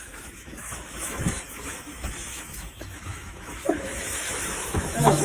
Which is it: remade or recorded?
remade